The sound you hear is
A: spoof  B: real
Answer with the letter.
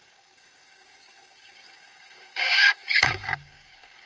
A